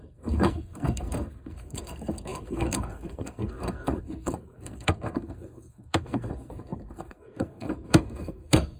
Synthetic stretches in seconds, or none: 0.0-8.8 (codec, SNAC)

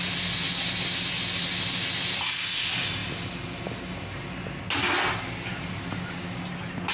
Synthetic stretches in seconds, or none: none

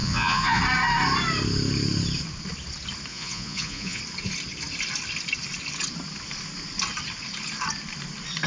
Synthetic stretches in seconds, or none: 0.0-0.6 (vocoder, Vocos); 3.1-4.0

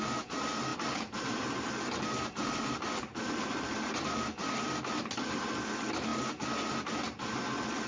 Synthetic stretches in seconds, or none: none

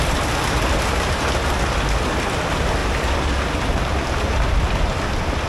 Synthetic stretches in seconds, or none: none